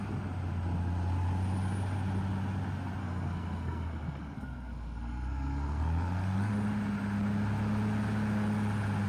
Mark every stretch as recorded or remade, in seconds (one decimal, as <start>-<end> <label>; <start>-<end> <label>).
0.0-3.0 recorded; 3.0-6.5 remade; 6.5-9.1 recorded